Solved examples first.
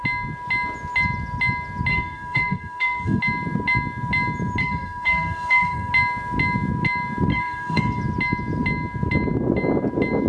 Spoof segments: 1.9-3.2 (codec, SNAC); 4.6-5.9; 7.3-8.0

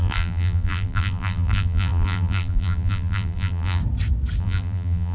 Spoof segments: 0.0-3.8 (vocoder, BigVGAN v2); 4.4-5.1

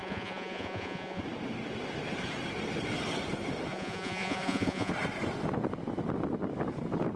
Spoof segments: 0.0-1.2 (vocoder, Vocos); 3.7-4.9

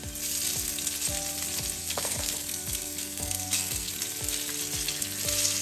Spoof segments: 1.8-3.9 (codec, SNAC)

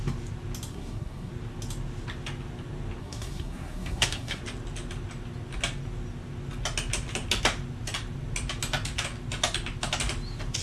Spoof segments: 0.7-1.3 (codec, SNAC); 3.0-4.4